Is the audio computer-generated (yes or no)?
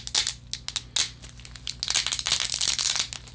no